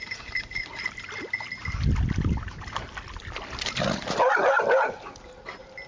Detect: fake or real real